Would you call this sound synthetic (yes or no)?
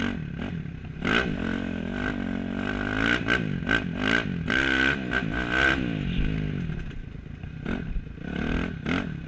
no